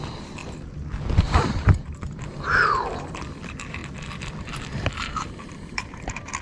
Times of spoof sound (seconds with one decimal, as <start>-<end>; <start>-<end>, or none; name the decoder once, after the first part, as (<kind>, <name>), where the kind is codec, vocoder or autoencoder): 0.0-0.4 (vocoder, BigVGAN v2); 1.0-3.8; 4.7-6.4